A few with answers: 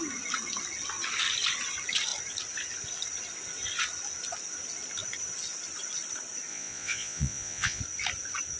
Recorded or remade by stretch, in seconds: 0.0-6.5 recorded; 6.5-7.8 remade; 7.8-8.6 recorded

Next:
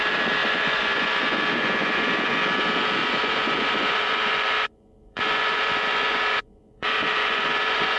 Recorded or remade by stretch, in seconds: 0.0-0.4 recorded; 0.4-2.4 remade; 2.4-3.0 recorded; 3.0-8.0 remade

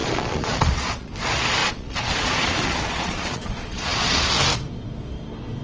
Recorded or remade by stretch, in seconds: 0.0-1.1 remade; 1.1-1.6 recorded; 1.6-4.3 remade; 4.3-5.6 recorded

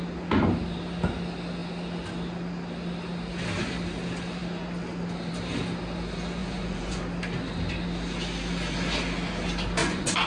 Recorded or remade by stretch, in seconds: 0.0-6.4 recorded; 6.4-7.0 remade; 7.0-9.8 recorded; 9.8-10.3 remade

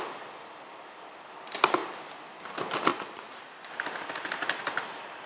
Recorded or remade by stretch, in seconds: 0.0-2.9 recorded; 2.9-3.7 remade; 3.7-5.3 recorded

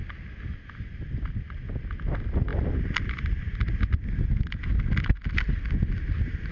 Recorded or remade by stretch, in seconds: 0.0-6.5 recorded

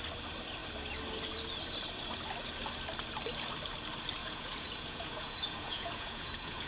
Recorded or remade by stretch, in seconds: 0.0-4.2 recorded; 4.2-6.7 remade

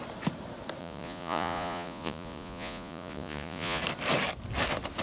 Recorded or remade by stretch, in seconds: 0.0-0.8 recorded; 0.8-3.8 remade; 3.8-5.0 recorded